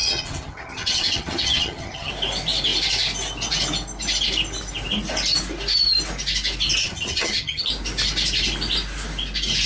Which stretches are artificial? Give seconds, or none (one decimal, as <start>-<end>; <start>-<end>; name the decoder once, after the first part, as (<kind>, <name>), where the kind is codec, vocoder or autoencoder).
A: 0.0-2.1 (vocoder, HiFi-GAN); 6.8-7.7